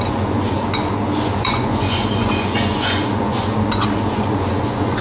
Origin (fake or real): fake